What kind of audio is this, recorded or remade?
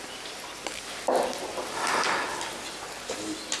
recorded